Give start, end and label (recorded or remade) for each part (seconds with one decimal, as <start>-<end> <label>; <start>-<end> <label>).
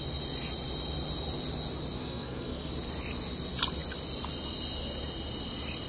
0.0-2.0 recorded; 2.0-2.7 remade; 2.7-5.9 recorded